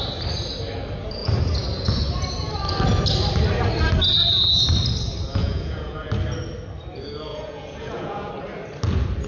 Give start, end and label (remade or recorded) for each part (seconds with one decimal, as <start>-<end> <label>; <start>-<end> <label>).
0.0-5.4 recorded; 5.4-6.1 remade; 6.1-7.3 recorded; 7.3-8.3 remade; 8.3-9.3 recorded

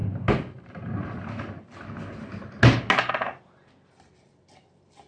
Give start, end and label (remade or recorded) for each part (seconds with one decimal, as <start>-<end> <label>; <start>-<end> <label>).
0.0-3.1 recorded; 3.1-5.1 remade

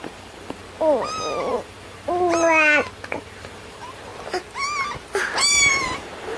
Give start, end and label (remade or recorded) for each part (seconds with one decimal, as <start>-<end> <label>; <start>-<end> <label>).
0.0-0.6 remade; 0.6-1.5 recorded; 1.5-2.1 remade; 2.1-3.2 recorded; 3.2-4.1 remade; 4.1-5.5 recorded; 5.5-6.4 remade

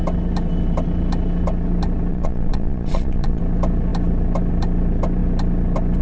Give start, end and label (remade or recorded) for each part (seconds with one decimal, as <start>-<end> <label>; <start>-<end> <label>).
0.0-2.1 recorded; 2.1-3.4 remade; 3.4-6.0 recorded

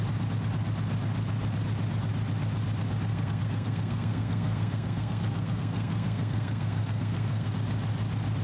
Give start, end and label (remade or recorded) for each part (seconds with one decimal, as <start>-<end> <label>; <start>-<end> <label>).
0.0-3.1 recorded; 3.1-7.5 remade; 7.5-8.4 recorded